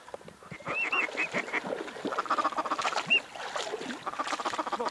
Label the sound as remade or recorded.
recorded